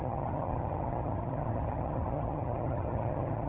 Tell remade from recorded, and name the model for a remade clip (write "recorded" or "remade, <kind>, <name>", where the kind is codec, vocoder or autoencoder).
remade, vocoder, HiFi-GAN